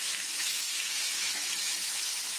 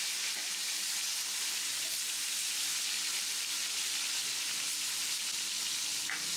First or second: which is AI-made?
first